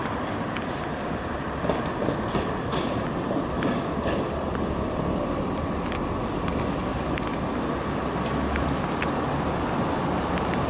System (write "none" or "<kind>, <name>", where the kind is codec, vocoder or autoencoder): none